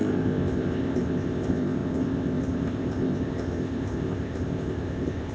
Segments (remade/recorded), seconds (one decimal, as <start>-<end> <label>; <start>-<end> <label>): 0.0-5.3 remade

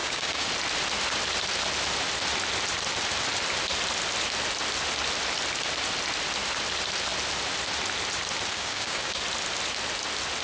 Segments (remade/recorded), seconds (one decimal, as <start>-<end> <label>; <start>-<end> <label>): 0.0-0.5 remade; 0.5-8.5 recorded; 8.5-9.2 remade; 9.2-10.4 recorded

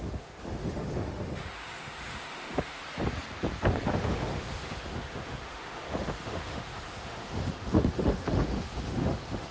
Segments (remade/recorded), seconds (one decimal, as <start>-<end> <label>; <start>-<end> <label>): 0.0-2.8 remade; 2.8-3.9 recorded; 3.9-9.5 remade

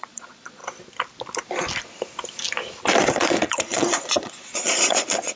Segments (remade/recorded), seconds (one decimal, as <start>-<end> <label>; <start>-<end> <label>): 0.0-0.6 remade; 0.6-3.1 recorded; 3.1-5.4 remade

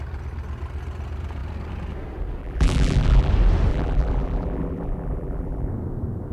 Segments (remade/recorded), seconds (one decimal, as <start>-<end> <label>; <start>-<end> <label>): 0.0-2.4 recorded; 2.4-3.3 remade; 3.3-3.7 recorded; 3.7-5.7 remade; 5.7-6.3 recorded